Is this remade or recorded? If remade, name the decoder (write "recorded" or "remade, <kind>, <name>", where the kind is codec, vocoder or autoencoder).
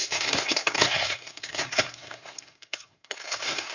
remade, codec, SNAC